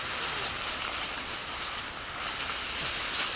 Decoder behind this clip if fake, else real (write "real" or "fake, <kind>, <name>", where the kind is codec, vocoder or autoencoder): real